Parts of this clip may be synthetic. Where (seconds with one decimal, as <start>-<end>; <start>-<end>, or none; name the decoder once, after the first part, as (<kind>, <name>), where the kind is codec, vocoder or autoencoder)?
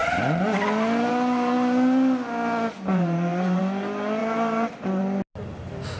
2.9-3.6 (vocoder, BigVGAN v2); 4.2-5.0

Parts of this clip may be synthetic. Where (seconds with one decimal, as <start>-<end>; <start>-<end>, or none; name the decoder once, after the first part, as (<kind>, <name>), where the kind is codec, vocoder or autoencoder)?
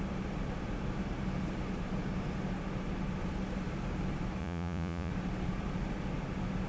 4.4-5.1 (vocoder, Vocos)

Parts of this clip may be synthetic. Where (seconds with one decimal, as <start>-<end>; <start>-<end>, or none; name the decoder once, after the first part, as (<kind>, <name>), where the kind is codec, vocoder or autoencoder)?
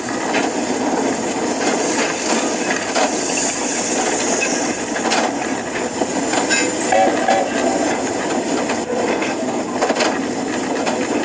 9.1-9.6 (codec, SNAC)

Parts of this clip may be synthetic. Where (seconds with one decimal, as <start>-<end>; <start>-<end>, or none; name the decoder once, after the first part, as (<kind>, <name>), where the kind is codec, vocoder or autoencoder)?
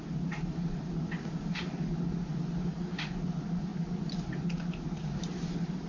none